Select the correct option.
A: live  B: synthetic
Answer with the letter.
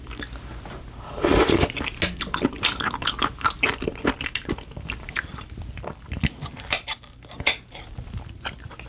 A